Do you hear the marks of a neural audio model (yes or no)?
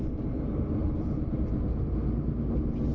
no